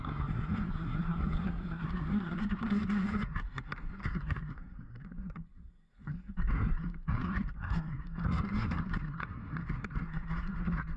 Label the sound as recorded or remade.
remade